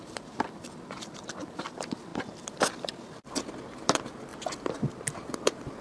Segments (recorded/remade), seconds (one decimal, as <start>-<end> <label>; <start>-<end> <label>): 0.0-2.1 remade; 2.1-3.8 recorded; 3.8-5.8 remade